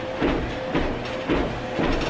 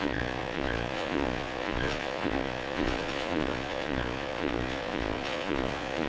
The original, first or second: first